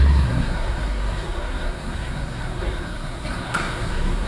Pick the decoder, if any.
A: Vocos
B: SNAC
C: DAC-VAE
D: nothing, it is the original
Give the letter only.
B